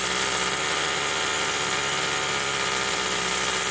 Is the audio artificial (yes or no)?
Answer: no